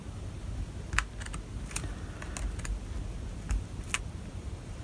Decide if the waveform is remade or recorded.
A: recorded